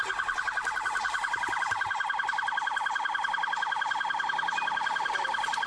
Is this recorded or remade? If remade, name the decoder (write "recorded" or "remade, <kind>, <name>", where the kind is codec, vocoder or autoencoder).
recorded